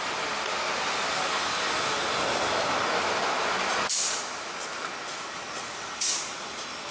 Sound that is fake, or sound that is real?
real